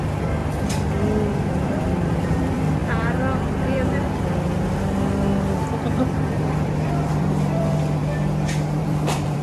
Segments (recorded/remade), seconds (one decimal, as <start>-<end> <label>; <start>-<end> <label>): 0.0-0.4 remade; 0.4-1.3 recorded; 1.3-2.8 remade; 2.8-6.1 recorded; 6.1-8.0 remade; 8.0-8.8 recorded; 8.8-9.4 remade